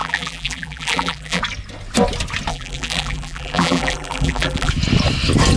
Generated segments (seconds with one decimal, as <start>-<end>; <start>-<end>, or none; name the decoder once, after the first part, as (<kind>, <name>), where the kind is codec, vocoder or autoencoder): 0.0-1.4 (vocoder, BigVGAN v2); 2.5-4.7